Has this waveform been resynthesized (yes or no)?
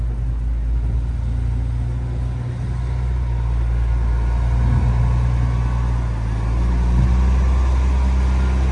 no